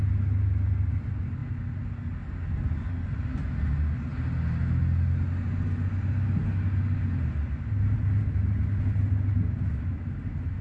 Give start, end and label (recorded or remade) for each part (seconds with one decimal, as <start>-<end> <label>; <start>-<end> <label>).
0.0-10.6 recorded